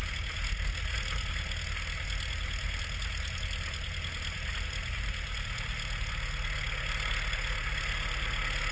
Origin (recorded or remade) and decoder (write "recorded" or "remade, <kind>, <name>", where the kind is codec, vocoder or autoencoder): recorded